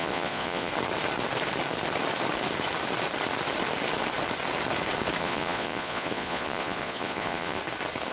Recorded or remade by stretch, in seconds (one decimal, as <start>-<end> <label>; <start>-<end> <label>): 0.0-0.7 remade; 0.7-5.2 recorded; 5.2-7.6 remade; 7.6-8.1 recorded